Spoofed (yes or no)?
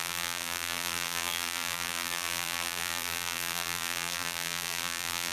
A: yes